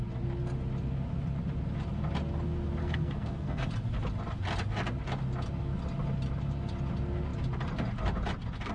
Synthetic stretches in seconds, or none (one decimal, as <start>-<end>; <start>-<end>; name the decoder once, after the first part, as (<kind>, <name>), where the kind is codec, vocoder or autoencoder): 2.8-3.7 (codec, SNAC)